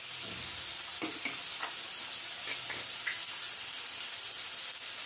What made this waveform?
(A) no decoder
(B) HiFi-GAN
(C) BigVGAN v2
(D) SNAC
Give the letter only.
A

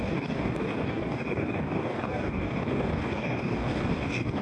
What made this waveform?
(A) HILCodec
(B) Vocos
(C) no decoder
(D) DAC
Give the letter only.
D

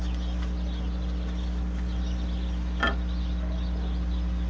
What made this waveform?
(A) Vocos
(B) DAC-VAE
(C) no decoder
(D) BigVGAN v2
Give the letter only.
C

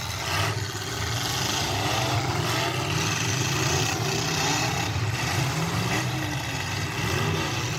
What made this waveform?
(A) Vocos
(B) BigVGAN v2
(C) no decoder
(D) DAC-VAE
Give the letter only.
C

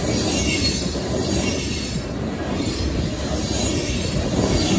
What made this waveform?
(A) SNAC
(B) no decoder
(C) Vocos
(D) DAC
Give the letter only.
B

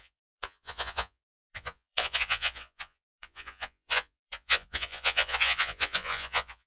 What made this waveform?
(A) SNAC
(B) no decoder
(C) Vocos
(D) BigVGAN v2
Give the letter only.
C